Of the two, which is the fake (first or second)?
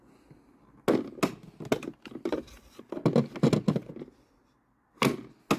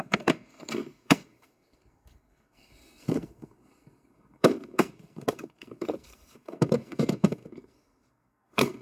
second